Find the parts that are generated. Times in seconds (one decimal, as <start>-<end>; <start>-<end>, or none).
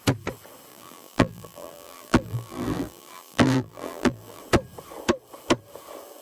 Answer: 0.7-4.4